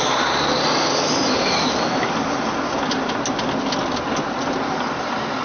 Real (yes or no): yes